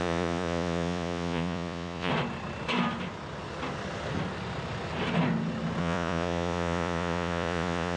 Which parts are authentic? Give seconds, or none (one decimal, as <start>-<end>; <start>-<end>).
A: 2.1-5.8

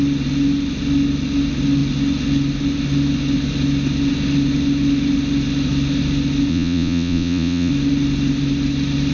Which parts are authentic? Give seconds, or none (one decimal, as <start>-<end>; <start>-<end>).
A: 0.0-6.5; 7.7-9.1

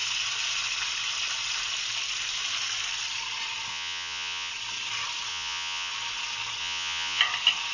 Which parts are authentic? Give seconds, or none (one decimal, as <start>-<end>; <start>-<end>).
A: 0.0-3.7; 4.5-5.3; 5.9-6.6; 7.2-7.7

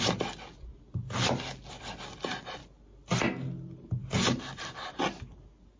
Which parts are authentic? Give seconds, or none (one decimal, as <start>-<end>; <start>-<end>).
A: 0.0-5.8